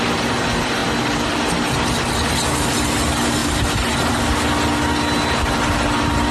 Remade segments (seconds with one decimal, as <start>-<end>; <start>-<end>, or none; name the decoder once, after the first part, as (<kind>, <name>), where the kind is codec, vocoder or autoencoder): none